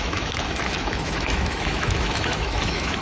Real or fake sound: fake